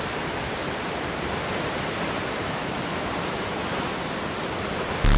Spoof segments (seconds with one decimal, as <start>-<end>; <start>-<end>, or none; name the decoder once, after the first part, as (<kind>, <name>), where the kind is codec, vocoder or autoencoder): 2.4-3.1 (autoencoder, DAC-VAE)